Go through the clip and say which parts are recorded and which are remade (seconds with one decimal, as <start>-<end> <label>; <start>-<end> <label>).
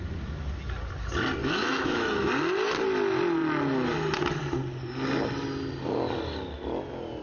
0.0-1.4 recorded; 1.4-2.3 remade; 2.3-7.2 recorded